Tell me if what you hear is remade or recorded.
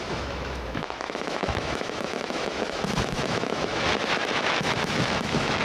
remade